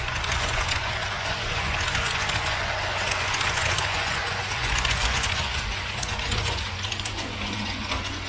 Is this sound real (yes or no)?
no